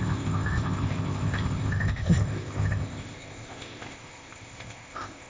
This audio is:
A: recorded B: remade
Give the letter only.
B